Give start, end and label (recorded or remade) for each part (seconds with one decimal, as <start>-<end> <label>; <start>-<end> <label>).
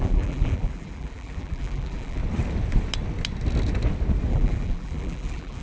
0.0-2.2 remade; 2.2-4.3 recorded; 4.3-5.6 remade